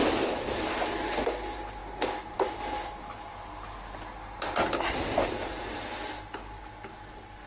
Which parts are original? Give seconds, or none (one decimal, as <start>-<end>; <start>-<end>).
0.7-3.3; 6.7-7.5